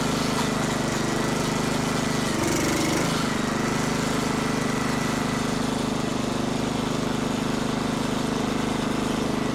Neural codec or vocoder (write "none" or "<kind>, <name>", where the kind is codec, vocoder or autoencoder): none